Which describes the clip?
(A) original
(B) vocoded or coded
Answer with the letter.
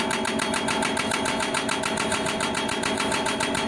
A